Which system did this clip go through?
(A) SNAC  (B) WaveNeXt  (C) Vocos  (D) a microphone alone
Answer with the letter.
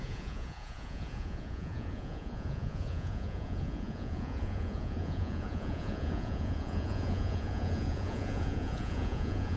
C